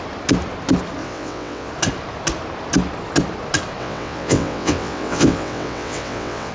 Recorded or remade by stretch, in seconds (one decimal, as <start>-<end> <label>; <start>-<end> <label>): 0.0-1.0 recorded; 1.0-1.7 remade; 1.7-3.8 recorded; 3.8-6.5 remade